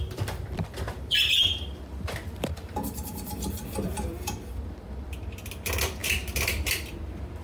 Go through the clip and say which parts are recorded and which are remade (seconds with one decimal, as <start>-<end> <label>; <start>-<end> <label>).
0.0-7.4 remade